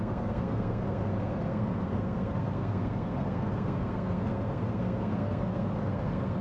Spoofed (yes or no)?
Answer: yes